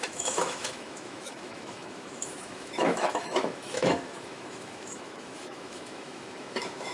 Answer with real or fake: fake